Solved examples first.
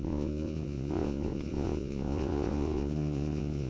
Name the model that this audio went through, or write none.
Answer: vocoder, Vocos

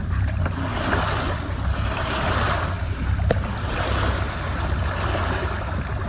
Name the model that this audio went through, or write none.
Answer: none